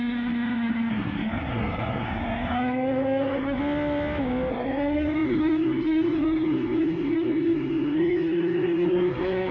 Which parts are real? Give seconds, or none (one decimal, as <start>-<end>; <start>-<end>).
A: 3.6-4.5